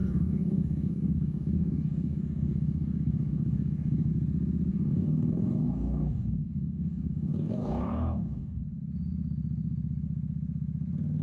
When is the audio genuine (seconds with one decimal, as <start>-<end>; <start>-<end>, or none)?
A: 4.1-4.7; 8.6-11.2